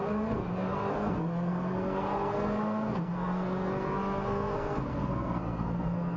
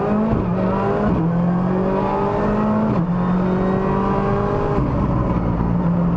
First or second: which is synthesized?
first